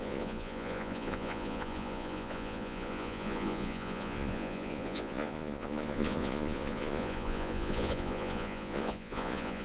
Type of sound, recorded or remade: remade